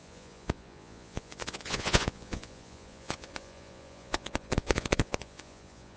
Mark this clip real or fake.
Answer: fake